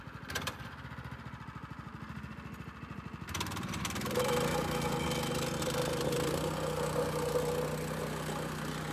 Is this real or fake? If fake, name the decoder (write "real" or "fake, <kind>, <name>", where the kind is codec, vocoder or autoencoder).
real